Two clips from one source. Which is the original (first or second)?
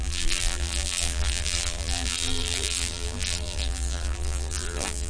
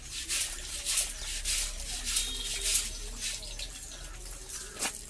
second